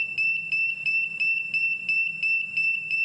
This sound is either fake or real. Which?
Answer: fake